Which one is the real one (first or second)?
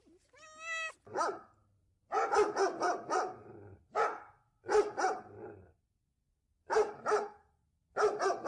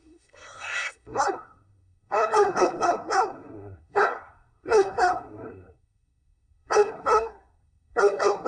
first